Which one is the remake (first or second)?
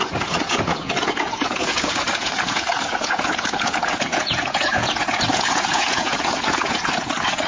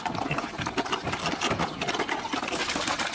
first